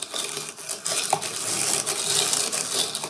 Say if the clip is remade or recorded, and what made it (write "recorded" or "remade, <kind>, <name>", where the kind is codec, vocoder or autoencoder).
recorded